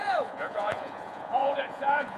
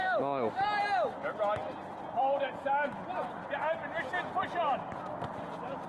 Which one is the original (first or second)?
second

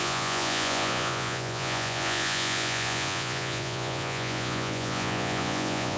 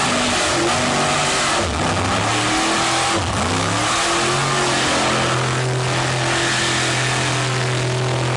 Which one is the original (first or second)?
second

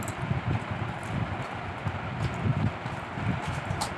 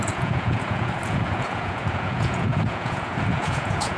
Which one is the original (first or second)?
first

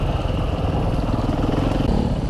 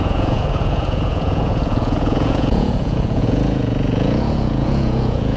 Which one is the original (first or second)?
first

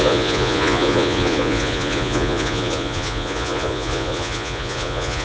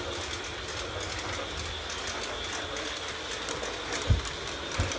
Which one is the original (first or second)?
second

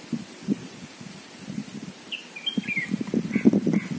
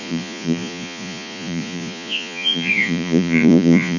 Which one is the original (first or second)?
first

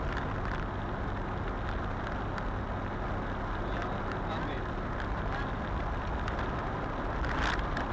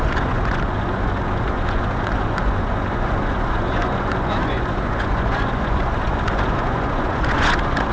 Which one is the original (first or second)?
first